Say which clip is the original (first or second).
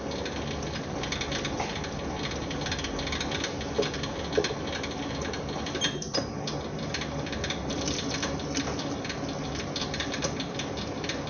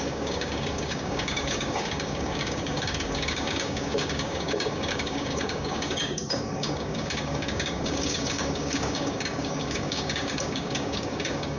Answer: first